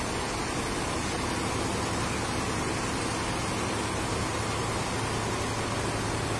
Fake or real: real